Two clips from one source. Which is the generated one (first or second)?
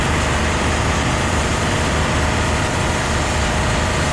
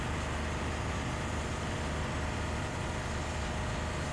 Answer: first